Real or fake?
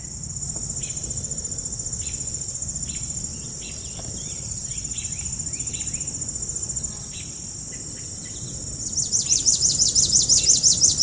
real